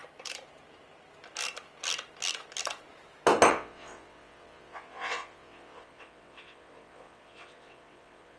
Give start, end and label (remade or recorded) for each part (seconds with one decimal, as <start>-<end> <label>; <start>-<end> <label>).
0.0-3.5 recorded; 3.5-8.4 remade

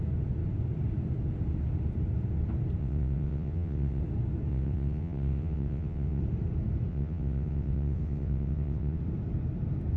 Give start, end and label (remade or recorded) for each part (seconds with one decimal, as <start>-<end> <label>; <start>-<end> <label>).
0.0-2.8 recorded; 2.8-4.0 remade; 4.0-4.5 recorded; 4.5-6.2 remade; 6.2-6.9 recorded; 6.9-9.0 remade; 9.0-10.0 recorded